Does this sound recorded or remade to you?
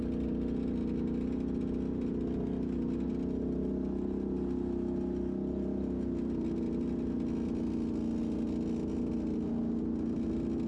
recorded